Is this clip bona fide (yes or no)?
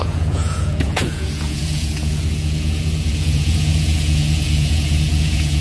no